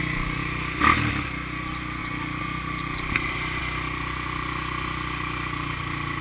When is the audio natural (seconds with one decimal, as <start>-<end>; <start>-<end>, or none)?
0.0-0.4; 1.1-2.0; 3.6-6.2